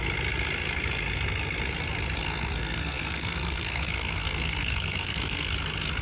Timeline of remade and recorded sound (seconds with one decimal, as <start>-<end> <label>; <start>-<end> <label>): 0.0-2.2 recorded; 2.2-5.5 remade; 5.5-6.0 recorded